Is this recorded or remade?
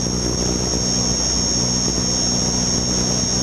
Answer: recorded